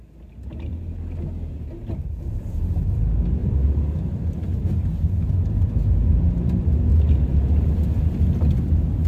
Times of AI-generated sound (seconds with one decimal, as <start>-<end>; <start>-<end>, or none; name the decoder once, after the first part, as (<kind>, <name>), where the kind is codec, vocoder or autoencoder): 3.4-5.1 (vocoder, BigVGAN v2)